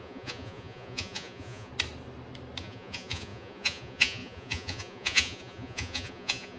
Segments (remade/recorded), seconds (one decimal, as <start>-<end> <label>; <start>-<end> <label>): 0.0-1.7 remade; 1.7-2.6 recorded; 2.6-6.6 remade